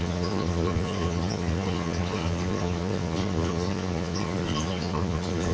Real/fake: fake